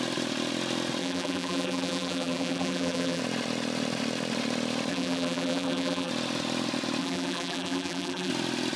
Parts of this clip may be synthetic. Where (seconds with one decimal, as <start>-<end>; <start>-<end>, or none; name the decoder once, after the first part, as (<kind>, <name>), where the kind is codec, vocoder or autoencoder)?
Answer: 1.0-3.2 (vocoder, BigVGAN v2); 4.9-6.1; 7.0-8.3